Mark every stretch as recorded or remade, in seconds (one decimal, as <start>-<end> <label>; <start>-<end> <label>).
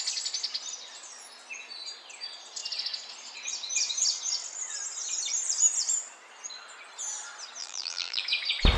0.0-7.6 recorded; 7.6-8.2 remade; 8.2-8.8 recorded